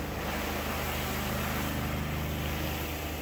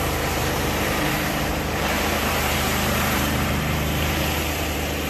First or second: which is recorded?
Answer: first